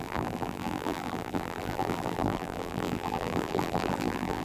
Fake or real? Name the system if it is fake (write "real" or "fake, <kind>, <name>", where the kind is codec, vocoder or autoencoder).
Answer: fake, vocoder, BigVGAN v2